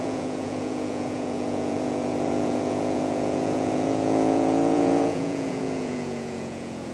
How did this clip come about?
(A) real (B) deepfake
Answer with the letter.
B